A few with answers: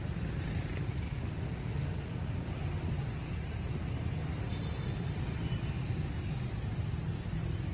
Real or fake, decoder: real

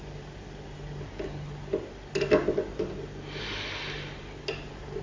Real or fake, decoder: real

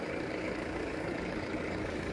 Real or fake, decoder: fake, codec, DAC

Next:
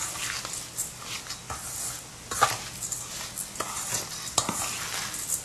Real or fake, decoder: real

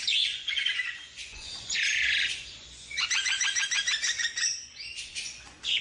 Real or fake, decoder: fake, vocoder, Vocos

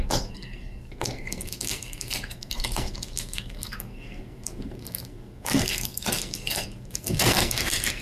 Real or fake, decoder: fake, codec, SNAC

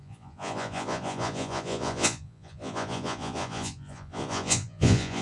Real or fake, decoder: fake, vocoder, Vocos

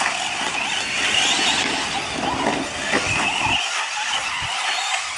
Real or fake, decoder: real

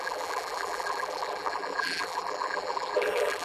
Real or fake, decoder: fake, vocoder, BigVGAN v2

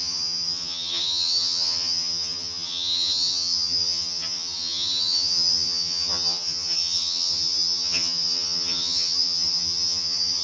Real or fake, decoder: fake, vocoder, HiFi-GAN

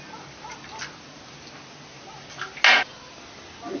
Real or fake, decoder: real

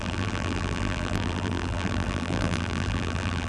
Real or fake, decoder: fake, vocoder, BigVGAN v2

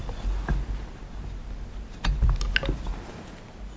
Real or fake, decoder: real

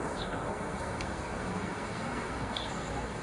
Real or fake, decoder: fake, codec, SNAC